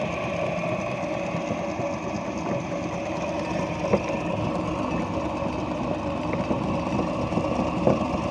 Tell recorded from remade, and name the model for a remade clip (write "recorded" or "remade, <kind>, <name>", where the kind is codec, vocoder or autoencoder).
recorded